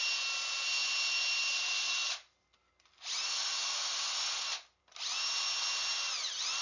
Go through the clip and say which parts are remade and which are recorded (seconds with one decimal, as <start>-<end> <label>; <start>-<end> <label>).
0.0-6.6 recorded